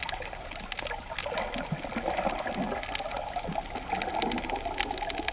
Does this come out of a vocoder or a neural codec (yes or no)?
no